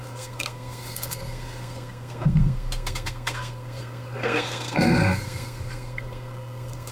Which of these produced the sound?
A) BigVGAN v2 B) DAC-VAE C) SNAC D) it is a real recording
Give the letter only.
C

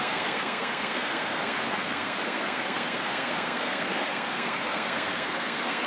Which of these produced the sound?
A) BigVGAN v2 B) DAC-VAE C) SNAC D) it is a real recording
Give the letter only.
C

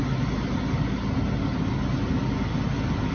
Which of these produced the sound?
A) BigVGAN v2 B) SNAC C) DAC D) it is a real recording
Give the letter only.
D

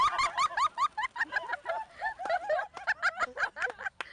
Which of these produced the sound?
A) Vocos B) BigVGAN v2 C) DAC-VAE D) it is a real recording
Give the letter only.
D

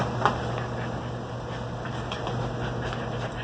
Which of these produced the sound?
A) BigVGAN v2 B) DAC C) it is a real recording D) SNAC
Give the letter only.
C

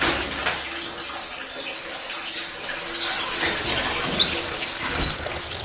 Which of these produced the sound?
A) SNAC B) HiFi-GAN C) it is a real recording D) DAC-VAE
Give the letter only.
C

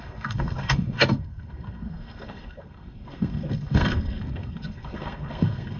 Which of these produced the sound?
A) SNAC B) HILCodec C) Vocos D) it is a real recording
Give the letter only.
A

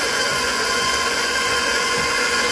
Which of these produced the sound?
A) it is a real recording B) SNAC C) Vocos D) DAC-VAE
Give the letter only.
C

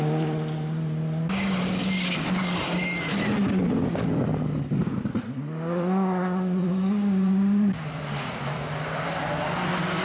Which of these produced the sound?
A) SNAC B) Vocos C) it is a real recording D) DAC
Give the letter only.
C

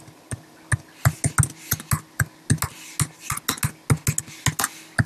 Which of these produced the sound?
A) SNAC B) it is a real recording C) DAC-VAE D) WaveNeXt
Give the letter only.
B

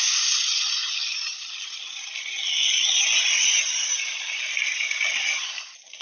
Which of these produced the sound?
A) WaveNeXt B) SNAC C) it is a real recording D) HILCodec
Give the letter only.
C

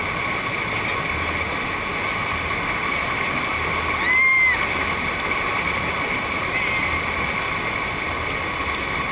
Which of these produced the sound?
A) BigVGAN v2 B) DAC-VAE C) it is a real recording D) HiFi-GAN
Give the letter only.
C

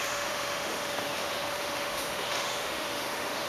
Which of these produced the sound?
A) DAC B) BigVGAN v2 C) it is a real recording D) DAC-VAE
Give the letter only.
D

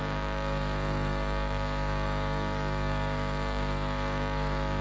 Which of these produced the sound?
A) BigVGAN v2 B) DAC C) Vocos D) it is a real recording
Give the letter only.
B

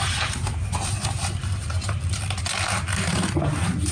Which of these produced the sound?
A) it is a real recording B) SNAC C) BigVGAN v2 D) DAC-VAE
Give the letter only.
A